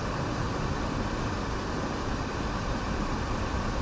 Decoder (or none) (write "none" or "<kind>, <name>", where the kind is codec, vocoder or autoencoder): vocoder, BigVGAN v2